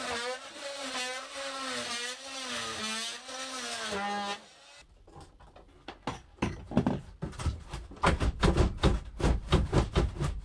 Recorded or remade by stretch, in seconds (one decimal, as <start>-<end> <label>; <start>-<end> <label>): 0.0-8.9 recorded; 8.9-10.4 remade